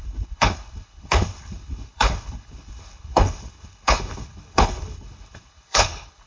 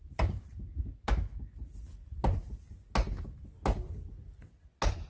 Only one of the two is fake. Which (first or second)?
first